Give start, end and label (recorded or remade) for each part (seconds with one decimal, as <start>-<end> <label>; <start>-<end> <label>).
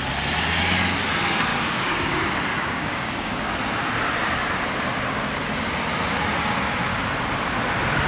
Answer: 0.0-1.5 recorded; 1.5-2.1 remade; 2.1-2.5 recorded; 2.5-3.5 remade; 3.5-8.1 recorded